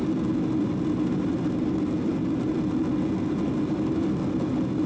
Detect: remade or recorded recorded